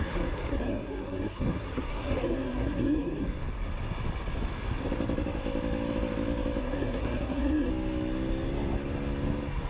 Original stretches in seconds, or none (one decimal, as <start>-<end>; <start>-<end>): 3.4-6.6; 7.7-9.7